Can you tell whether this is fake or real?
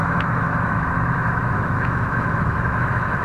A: fake